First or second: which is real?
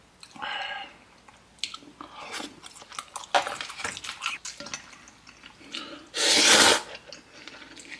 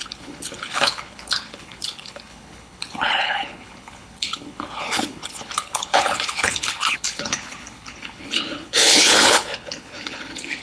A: first